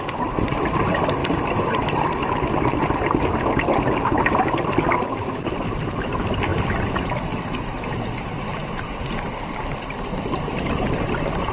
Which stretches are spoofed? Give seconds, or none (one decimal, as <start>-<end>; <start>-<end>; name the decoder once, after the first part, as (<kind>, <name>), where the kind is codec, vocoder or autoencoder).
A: 6.5-11.1 (vocoder, BigVGAN v2)